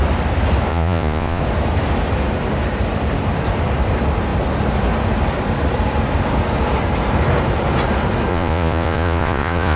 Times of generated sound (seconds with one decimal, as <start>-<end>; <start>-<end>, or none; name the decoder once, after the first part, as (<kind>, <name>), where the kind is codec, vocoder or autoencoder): 0.7-1.4 (vocoder, Vocos); 8.3-9.8